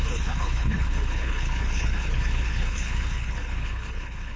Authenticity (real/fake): fake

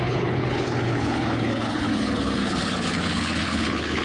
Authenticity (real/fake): fake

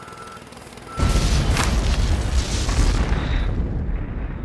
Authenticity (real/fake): real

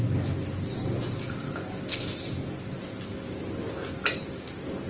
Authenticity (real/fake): real